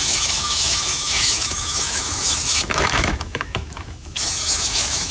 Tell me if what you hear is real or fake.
fake